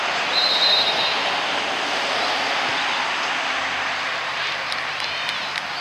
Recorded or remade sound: remade